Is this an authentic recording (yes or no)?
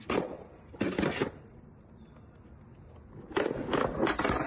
yes